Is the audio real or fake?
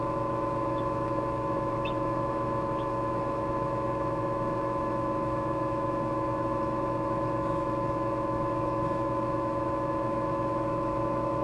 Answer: fake